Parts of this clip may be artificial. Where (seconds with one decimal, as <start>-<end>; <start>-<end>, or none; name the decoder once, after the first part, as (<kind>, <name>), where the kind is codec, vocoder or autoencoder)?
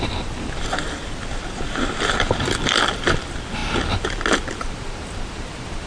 none